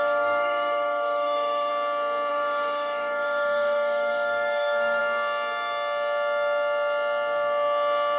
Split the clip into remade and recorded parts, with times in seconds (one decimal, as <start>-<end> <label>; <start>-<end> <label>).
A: 0.0-1.7 remade; 1.7-2.3 recorded; 2.3-5.0 remade; 5.0-8.2 recorded